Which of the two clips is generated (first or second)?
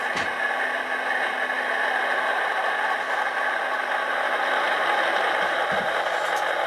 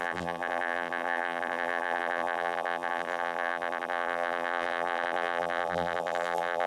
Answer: second